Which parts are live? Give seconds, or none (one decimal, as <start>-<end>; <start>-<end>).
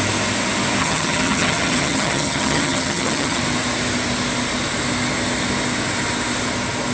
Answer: 0.0-0.8; 3.4-6.9